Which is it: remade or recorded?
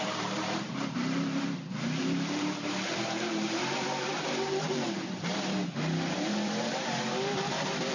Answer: remade